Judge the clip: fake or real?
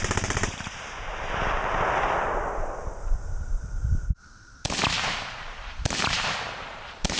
fake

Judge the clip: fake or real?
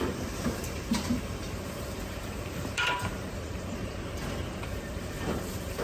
fake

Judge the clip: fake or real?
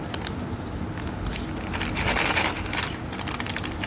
real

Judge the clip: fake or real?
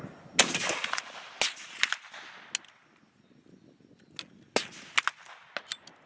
real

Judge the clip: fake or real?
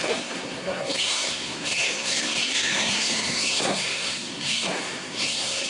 fake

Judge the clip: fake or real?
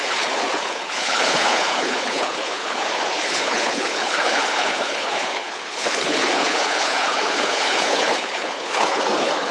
fake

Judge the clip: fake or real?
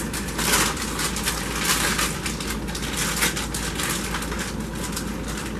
real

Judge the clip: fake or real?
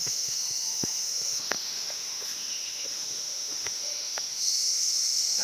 fake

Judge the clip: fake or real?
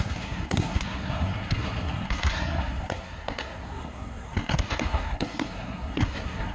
fake